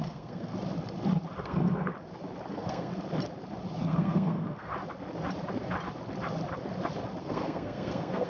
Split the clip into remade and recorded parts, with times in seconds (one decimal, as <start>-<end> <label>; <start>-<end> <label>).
0.0-0.5 remade; 0.5-1.4 recorded; 1.4-1.9 remade; 1.9-2.5 recorded; 2.5-2.9 remade; 2.9-3.8 recorded; 3.8-4.7 remade; 4.7-7.2 recorded; 7.2-8.3 remade